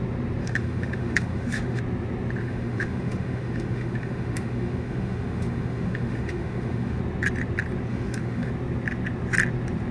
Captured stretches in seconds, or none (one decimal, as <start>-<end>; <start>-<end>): 0.0-0.4; 1.8-2.4; 7.0-7.9; 8.5-9.9